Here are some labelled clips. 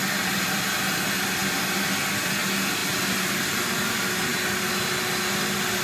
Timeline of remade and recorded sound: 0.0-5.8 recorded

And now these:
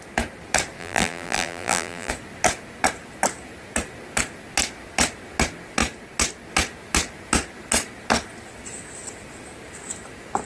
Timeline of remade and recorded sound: 0.0-0.8 recorded; 0.8-2.1 remade; 2.1-10.5 recorded